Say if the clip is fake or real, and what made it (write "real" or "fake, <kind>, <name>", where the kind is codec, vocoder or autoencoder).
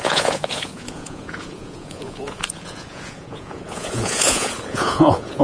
fake, vocoder, Vocos